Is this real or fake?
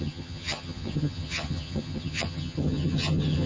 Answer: fake